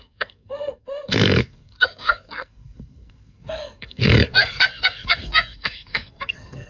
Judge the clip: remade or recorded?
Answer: remade